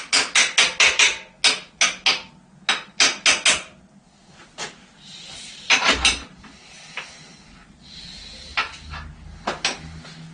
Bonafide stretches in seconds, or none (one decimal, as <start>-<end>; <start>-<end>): 0.0-10.3